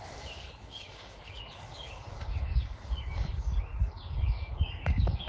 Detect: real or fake fake